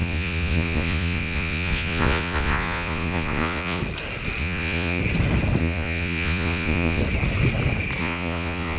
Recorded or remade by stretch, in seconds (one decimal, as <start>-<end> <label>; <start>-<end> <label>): 0.0-3.8 remade; 3.8-4.4 recorded; 4.4-5.0 remade; 5.0-5.6 recorded; 5.6-7.0 remade; 7.0-8.0 recorded; 8.0-8.8 remade

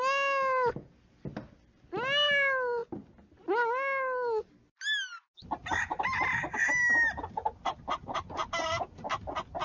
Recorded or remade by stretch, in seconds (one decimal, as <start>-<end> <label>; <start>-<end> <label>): 0.0-9.6 recorded

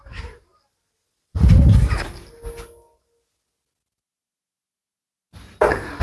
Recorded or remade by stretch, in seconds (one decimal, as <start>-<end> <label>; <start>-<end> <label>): 0.0-6.0 recorded